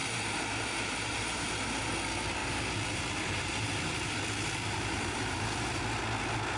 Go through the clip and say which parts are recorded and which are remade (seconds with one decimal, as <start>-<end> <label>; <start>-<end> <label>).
0.0-1.9 remade; 1.9-2.4 recorded; 2.4-5.8 remade; 5.8-6.6 recorded